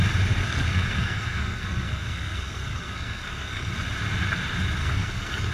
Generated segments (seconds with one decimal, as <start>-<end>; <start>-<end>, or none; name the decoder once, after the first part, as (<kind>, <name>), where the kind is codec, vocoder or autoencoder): 0.4-3.7 (codec, SNAC); 4.8-5.5